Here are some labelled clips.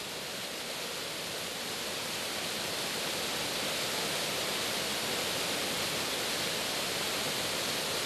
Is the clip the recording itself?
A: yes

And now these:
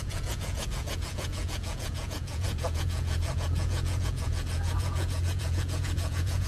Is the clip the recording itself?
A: no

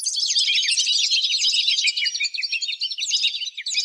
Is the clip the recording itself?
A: yes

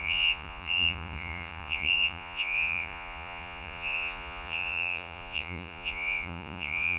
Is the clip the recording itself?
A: no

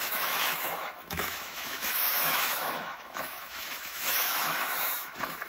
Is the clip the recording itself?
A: no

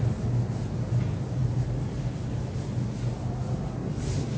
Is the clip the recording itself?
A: yes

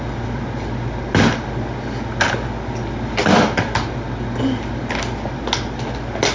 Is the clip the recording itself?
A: yes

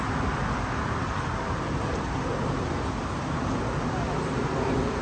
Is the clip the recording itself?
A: yes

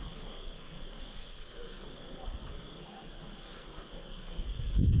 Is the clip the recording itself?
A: no